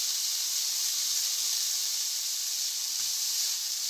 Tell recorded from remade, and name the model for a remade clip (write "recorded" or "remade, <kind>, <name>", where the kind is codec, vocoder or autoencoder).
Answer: recorded